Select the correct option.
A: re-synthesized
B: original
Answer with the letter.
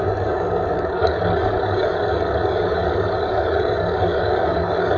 A